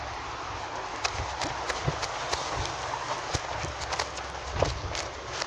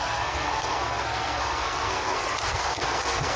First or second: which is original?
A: first